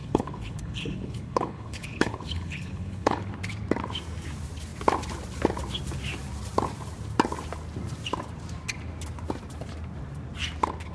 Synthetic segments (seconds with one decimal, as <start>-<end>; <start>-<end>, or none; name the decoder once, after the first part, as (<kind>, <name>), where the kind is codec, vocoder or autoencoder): 0.0-3.3 (codec, HILCodec)